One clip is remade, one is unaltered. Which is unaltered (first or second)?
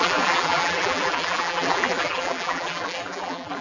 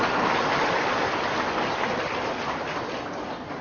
second